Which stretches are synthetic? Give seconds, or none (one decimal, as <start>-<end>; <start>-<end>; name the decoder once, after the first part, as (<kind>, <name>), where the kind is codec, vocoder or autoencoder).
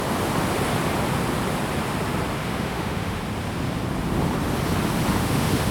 2.5-3.2 (autoencoder, DAC-VAE); 5.2-5.7